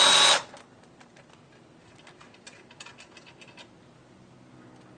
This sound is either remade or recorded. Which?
recorded